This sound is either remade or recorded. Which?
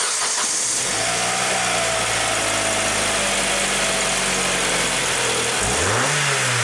recorded